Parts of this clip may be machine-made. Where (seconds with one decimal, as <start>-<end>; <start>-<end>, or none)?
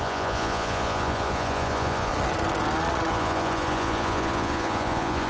0.0-2.1; 3.1-5.3